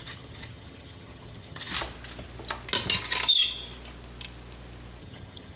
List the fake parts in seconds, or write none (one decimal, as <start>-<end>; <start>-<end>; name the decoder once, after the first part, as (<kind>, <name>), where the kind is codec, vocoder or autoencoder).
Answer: 0.0-1.7 (vocoder, HiFi-GAN); 5.0-5.6